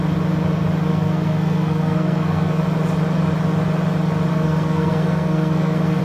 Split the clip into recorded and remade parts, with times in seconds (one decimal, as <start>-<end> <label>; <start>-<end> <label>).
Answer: 0.0-0.9 recorded; 0.9-2.6 remade; 2.6-4.3 recorded; 4.3-6.0 remade